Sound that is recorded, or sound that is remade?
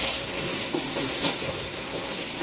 remade